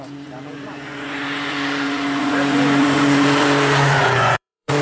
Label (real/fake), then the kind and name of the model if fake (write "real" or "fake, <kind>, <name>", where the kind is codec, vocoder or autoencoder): fake, vocoder, Vocos